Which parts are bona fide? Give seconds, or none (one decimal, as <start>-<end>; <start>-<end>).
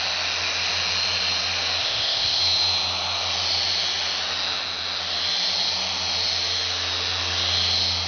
0.0-1.8; 2.4-8.1